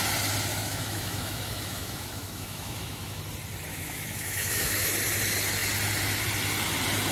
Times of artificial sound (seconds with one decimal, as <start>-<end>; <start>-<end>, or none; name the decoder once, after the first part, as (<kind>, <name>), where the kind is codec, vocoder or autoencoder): 0.5-3.2 (autoencoder, DAC-VAE); 3.7-4.9